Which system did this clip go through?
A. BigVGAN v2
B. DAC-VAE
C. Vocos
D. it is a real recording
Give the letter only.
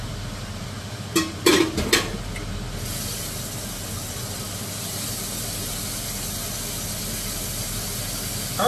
D